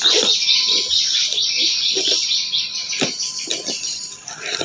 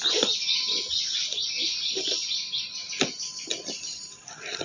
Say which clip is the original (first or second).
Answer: second